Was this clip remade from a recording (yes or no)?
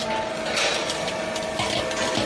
no